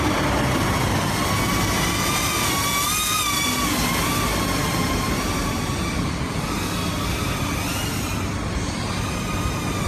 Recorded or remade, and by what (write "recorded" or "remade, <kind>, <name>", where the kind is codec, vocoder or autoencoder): recorded